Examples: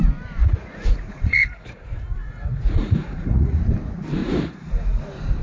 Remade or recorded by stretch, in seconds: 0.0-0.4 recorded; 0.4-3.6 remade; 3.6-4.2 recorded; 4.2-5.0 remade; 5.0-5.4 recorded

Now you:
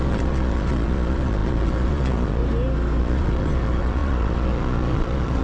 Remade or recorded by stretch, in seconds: 0.0-2.4 remade; 2.4-3.0 recorded; 3.0-5.4 remade